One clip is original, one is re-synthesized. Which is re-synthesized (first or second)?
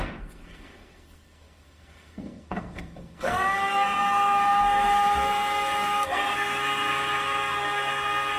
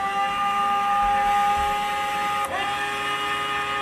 first